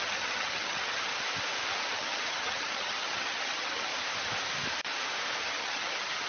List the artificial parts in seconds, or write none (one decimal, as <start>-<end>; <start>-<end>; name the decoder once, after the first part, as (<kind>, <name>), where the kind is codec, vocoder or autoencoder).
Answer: 0.0-1.1 (vocoder, HiFi-GAN); 1.9-3.9; 5.4-6.3